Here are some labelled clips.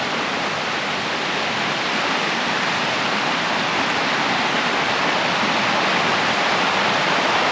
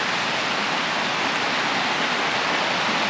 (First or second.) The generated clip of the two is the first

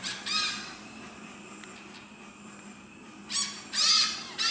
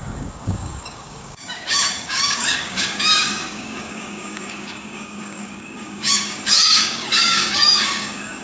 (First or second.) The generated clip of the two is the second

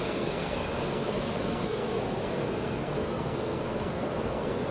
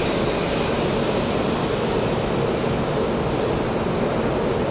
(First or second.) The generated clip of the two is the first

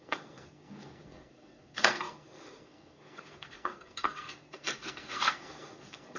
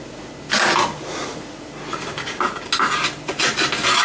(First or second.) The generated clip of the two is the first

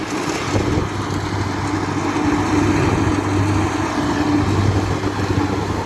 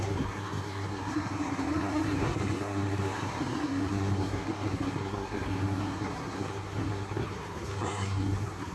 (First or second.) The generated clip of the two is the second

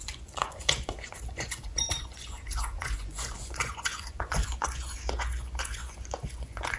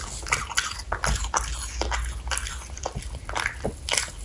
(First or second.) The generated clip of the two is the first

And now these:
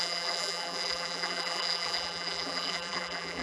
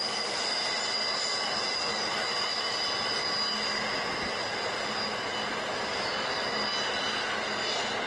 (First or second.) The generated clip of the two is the first